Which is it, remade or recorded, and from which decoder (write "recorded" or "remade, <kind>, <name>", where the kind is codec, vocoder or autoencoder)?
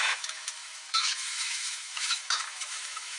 remade, autoencoder, DAC-VAE